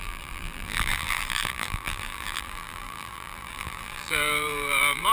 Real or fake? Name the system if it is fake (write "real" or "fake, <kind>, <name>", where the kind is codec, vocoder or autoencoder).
fake, vocoder, BigVGAN v2